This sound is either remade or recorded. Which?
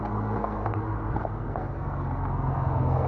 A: remade